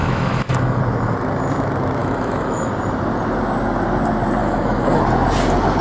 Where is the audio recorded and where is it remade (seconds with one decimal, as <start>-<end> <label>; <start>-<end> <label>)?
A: 0.0-0.8 remade; 0.8-2.0 recorded; 2.0-2.7 remade; 2.7-4.4 recorded; 4.4-5.0 remade; 5.0-5.8 recorded